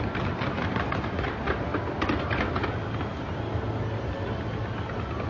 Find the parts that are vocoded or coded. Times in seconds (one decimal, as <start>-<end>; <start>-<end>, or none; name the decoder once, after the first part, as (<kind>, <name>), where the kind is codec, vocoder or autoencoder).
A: none

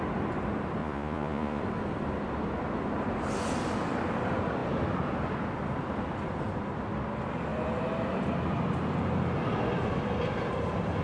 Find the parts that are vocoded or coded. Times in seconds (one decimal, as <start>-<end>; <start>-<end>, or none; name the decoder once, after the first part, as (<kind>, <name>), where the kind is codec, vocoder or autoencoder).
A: 0.8-1.6 (vocoder, Vocos)